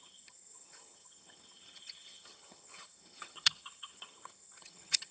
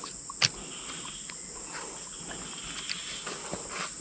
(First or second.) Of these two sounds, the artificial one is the first